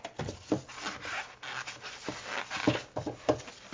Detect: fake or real real